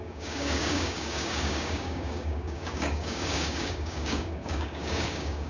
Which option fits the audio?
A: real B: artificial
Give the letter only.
B